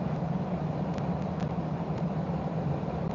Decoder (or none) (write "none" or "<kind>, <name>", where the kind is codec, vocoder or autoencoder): none